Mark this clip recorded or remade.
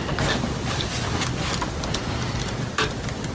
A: recorded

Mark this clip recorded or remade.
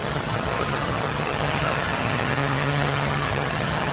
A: remade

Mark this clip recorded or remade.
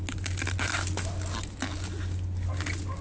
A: recorded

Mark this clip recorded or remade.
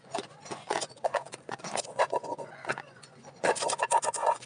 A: remade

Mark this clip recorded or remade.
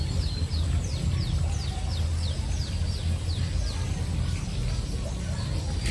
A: recorded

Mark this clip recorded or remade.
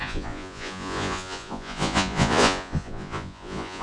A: remade